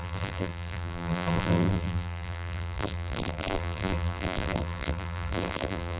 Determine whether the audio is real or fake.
fake